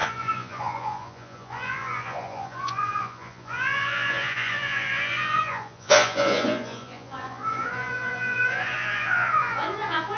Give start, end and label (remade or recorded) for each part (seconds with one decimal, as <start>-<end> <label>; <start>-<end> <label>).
0.0-10.2 remade